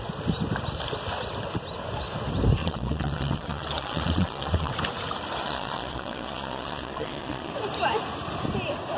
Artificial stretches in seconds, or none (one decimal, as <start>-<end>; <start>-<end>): 2.6-4.7; 5.4-7.5